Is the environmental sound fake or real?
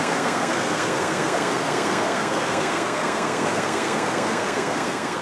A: fake